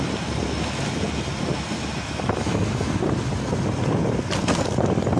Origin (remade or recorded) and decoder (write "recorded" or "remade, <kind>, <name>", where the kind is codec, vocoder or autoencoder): recorded